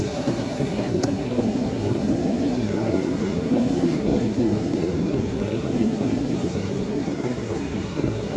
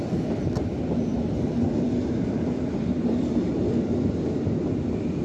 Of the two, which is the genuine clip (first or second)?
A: second